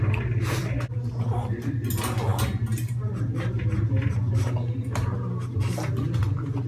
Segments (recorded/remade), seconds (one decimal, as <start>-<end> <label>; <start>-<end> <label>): 0.0-6.7 recorded